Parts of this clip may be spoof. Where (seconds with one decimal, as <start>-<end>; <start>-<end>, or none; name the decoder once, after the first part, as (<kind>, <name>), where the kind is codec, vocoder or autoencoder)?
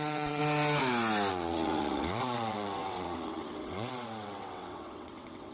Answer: 0.0-0.4 (vocoder, WaveNeXt); 1.3-5.5